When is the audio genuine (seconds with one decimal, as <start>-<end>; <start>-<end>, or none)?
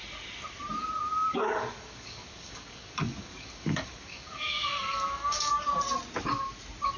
0.0-1.3; 5.5-7.0